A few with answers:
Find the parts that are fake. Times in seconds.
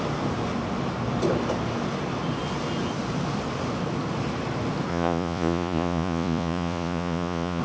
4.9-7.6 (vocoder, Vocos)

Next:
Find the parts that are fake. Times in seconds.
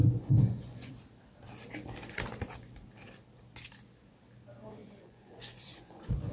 0.0-0.9 (vocoder, Vocos); 4.8-6.3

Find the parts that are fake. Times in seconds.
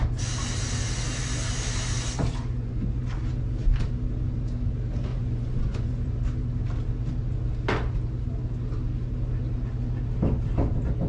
2.4-3.0 (vocoder, Vocos); 5.1-6.1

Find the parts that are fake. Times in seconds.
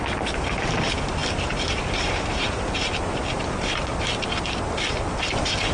none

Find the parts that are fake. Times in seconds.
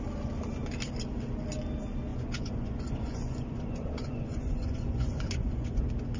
2.1-5.8 (vocoder, Vocos)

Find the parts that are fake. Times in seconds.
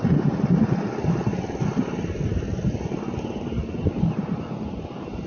none